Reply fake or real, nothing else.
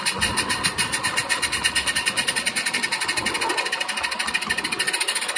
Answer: real